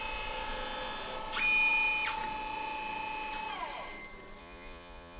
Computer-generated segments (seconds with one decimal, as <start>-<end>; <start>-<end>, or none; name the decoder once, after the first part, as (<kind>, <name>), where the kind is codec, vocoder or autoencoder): 4.4-5.2 (vocoder, Vocos)